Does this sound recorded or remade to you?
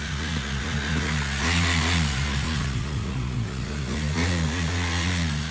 remade